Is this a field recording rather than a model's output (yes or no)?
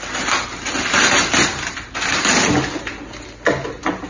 yes